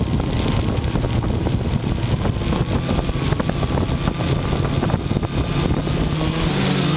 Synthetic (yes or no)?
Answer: no